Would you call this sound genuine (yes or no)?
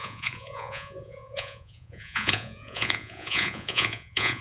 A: no